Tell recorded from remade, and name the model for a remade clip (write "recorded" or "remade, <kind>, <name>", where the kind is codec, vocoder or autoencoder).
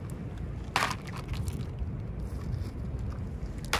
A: recorded